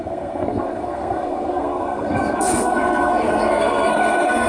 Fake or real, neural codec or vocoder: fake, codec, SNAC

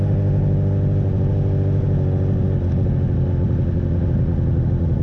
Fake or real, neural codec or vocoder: real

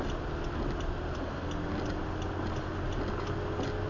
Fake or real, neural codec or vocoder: real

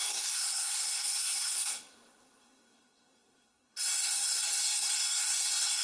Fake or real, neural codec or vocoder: fake, codec, SNAC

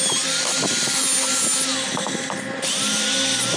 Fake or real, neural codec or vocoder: real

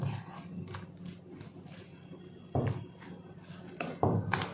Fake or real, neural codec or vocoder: real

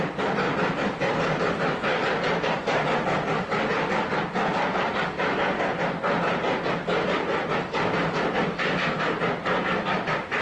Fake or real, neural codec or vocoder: real